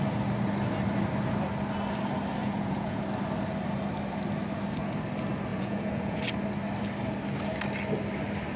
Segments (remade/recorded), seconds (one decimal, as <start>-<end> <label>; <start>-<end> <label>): 0.0-2.4 recorded; 2.4-3.0 remade; 3.0-5.5 recorded; 5.5-6.2 remade; 6.2-8.6 recorded